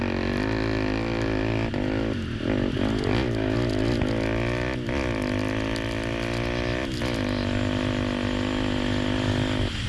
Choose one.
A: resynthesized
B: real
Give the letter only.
B